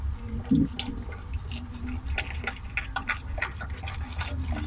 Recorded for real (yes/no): yes